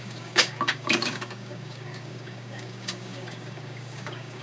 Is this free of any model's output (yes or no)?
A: no